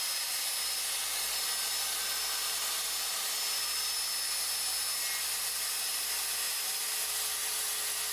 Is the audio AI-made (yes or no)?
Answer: no